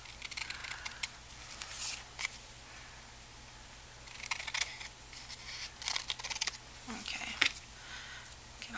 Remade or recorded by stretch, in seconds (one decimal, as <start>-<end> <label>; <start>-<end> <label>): 0.0-8.8 recorded